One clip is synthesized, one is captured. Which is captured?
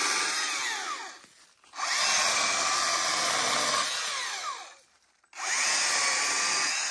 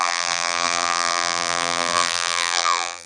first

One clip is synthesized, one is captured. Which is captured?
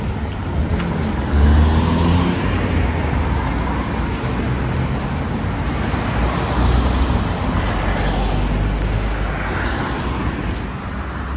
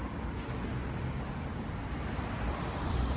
first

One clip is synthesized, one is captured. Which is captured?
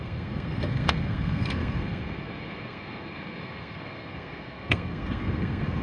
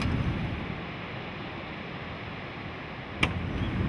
second